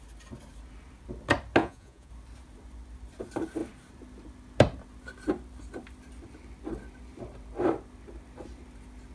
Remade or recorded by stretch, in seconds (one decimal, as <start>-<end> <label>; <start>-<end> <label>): 0.0-1.6 recorded; 1.6-2.1 remade; 2.1-9.1 recorded